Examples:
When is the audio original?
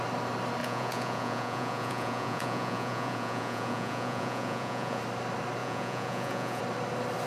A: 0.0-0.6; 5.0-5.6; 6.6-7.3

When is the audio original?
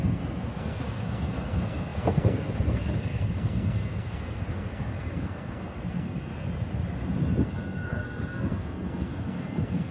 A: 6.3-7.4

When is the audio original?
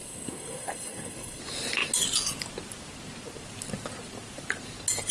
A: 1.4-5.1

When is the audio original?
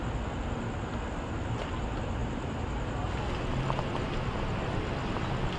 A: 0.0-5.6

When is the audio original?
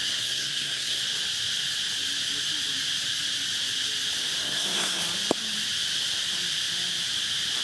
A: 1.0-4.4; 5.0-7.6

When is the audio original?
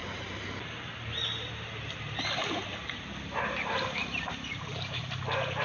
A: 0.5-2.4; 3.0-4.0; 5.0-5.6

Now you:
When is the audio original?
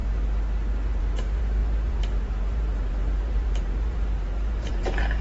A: 0.0-1.0